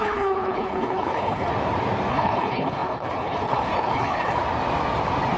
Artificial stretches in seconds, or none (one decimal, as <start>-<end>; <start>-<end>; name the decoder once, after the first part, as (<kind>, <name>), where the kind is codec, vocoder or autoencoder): 0.0-1.5 (codec, HILCodec); 2.1-4.4